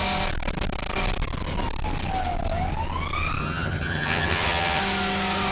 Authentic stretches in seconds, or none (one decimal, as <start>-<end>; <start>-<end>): 0.0-3.4; 4.8-5.5